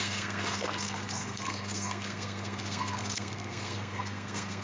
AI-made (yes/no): yes